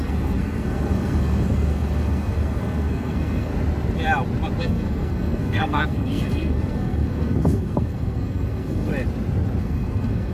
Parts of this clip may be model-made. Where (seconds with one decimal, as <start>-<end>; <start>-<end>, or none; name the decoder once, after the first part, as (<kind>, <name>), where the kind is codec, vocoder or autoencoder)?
0.0-3.5 (codec, SNAC); 4.6-8.9; 9.6-10.3

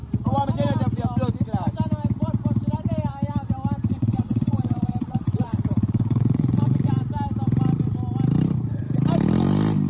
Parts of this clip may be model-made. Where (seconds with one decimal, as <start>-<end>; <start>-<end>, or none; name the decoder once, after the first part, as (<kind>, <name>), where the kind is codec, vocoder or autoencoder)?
3.9-6.9 (vocoder, WaveNeXt)

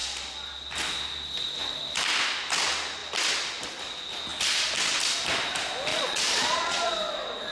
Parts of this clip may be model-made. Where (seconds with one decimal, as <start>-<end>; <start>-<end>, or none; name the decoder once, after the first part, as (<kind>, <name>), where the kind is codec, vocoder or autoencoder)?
5.9-6.9 (vocoder, Vocos)

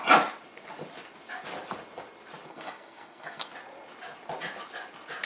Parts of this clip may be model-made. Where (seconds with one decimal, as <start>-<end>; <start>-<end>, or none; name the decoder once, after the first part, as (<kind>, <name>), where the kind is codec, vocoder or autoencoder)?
2.5-3.5 (codec, SNAC)

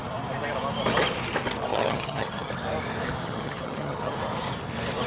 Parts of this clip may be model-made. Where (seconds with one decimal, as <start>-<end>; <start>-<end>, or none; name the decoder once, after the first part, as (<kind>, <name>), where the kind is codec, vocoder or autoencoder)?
1.7-2.5 (vocoder, HiFi-GAN); 3.2-4.1